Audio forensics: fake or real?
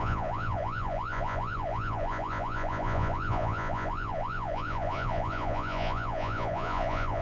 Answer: fake